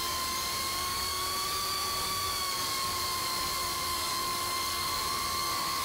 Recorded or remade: remade